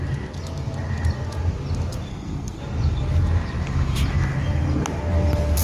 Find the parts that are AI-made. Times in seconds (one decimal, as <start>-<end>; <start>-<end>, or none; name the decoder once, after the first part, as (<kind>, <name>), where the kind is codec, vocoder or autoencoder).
2.1-2.6 (codec, SNAC)

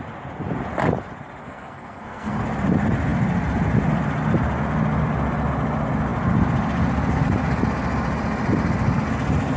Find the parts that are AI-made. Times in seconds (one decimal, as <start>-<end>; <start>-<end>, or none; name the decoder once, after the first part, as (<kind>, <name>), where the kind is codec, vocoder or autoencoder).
1.4-2.4 (codec, SNAC)

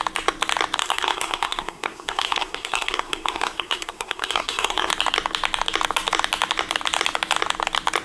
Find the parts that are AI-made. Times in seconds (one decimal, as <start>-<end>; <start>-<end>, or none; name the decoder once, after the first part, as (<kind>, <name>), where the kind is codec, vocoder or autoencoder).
0.8-4.9 (codec, SNAC)

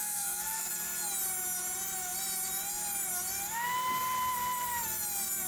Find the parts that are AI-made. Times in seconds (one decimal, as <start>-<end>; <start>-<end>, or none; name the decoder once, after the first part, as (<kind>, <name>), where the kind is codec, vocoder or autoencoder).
0.0-0.7 (codec, SNAC)

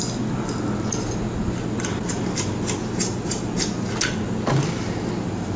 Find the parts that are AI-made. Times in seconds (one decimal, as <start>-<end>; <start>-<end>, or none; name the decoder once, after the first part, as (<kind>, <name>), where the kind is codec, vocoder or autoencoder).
none